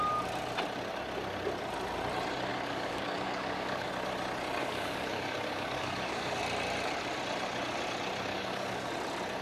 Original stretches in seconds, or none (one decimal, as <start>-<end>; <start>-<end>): 0.0-2.5; 3.9-4.6; 6.4-8.3; 8.9-9.4